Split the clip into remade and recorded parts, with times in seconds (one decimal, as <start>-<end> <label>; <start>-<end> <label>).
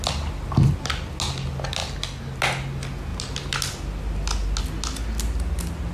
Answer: 0.0-5.9 recorded